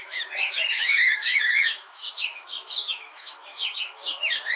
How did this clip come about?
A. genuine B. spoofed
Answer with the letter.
B